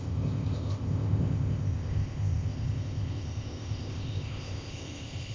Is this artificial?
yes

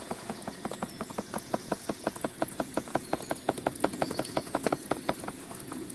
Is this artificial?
yes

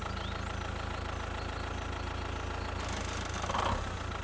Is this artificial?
no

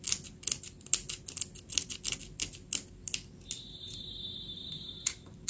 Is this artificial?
no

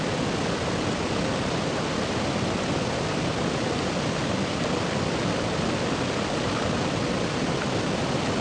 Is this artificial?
no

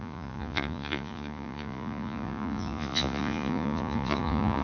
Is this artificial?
yes